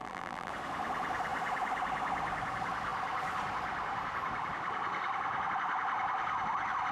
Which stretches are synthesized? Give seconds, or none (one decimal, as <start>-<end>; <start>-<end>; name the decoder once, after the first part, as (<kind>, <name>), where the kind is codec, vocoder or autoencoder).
0.0-0.5 (vocoder, BigVGAN v2)